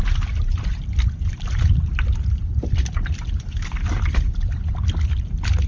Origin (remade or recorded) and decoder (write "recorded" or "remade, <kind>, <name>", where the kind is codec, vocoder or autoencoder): recorded